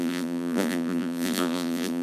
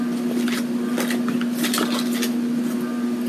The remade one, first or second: first